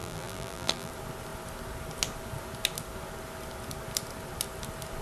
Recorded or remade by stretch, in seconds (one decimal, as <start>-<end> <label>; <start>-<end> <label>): 0.0-0.9 remade; 0.9-5.0 recorded